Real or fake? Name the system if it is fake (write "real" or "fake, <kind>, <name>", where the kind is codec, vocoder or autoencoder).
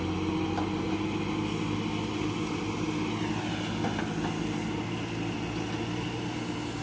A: real